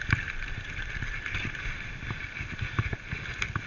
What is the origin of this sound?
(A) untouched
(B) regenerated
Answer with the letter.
A